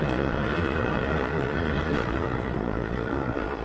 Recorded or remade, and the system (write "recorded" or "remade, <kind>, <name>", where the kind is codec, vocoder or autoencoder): remade, vocoder, Vocos